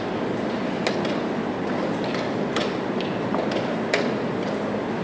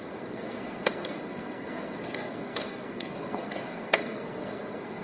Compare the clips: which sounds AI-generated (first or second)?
second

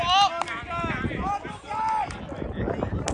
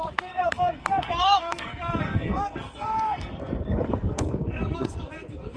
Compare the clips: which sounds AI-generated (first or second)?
second